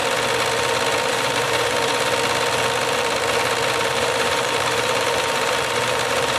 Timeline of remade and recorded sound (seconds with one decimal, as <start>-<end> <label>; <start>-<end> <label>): 0.0-1.1 recorded; 1.1-1.9 remade; 1.9-3.8 recorded; 3.8-6.4 remade